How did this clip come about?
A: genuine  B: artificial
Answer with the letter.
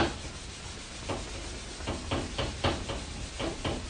A